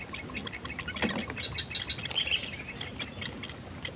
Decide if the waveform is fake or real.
real